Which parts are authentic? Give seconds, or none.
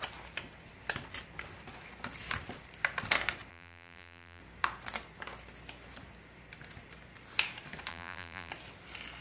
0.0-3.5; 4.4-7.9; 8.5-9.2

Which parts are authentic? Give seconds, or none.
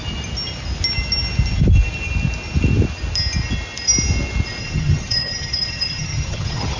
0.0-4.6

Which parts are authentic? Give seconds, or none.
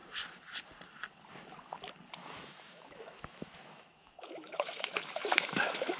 0.0-2.2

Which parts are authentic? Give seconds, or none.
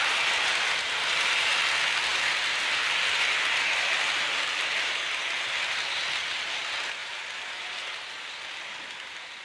0.0-7.0; 8.0-9.4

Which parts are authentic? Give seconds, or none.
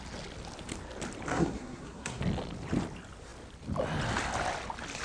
0.0-1.3; 2.2-5.0